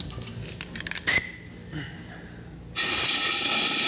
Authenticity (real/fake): real